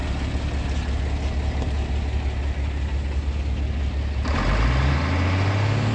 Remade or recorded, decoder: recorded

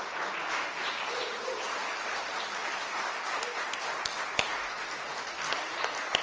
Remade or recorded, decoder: recorded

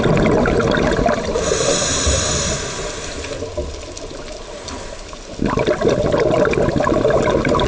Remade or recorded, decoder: recorded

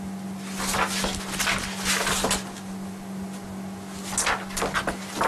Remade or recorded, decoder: recorded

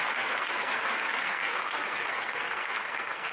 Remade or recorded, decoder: remade, codec, SNAC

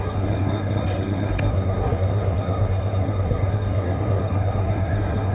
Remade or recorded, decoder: remade, codec, SNAC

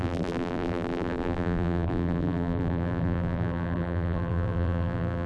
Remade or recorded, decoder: remade, vocoder, BigVGAN v2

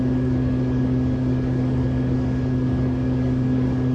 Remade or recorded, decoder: remade, codec, DAC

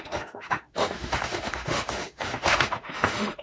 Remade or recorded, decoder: remade, autoencoder, DAC-VAE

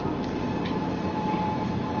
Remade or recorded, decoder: recorded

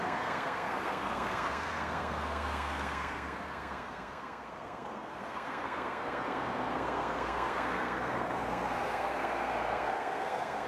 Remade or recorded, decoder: remade, codec, SNAC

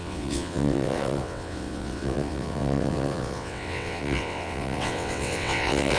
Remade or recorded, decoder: remade, vocoder, WaveNeXt